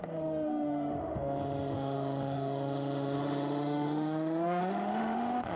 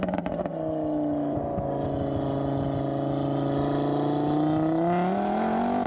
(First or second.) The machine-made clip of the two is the first